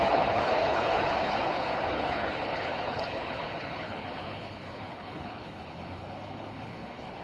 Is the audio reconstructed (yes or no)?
yes